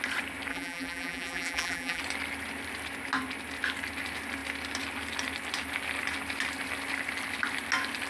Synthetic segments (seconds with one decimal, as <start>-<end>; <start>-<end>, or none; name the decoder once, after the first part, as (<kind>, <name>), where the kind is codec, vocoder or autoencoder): 0.5-2.0 (vocoder, BigVGAN v2)